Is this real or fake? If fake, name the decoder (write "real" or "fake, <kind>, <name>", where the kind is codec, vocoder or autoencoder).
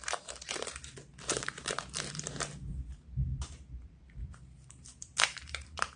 fake, vocoder, BigVGAN v2